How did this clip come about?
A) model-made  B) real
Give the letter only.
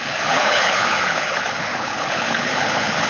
A